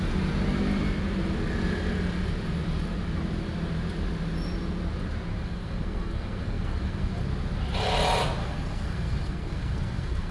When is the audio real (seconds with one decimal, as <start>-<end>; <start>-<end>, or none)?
0.0-5.3; 7.2-8.4